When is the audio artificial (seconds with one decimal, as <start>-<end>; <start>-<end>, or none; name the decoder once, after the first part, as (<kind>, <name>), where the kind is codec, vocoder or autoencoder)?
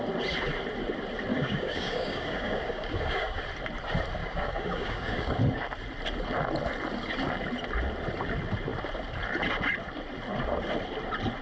1.3-3.4 (codec, DAC); 4.2-5.4